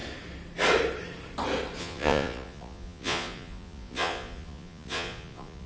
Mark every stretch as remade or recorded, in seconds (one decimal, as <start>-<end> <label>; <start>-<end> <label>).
0.0-1.8 recorded; 1.8-5.7 remade